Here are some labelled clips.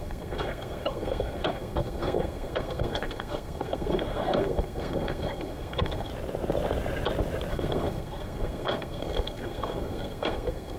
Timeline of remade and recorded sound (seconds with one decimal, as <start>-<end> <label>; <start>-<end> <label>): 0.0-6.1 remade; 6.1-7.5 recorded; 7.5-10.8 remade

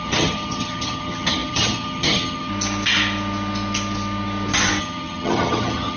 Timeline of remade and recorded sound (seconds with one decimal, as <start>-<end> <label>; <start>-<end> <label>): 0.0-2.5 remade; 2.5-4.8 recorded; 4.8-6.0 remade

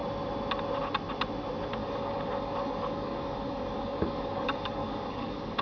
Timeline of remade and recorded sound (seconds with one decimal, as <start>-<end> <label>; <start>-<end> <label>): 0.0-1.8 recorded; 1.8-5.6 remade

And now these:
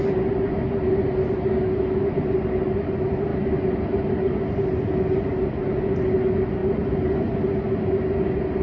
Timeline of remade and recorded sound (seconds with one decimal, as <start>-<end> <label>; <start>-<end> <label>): 0.0-8.6 recorded

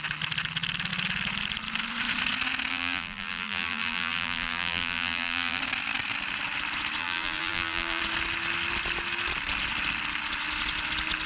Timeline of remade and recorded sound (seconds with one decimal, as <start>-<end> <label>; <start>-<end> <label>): 0.0-2.7 recorded; 2.7-5.6 remade; 5.6-7.0 recorded; 7.0-8.0 remade; 8.0-11.3 recorded

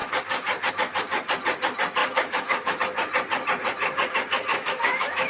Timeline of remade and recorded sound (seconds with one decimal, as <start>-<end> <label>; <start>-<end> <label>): 0.0-2.0 recorded; 2.0-2.8 remade; 2.8-4.5 recorded; 4.5-5.3 remade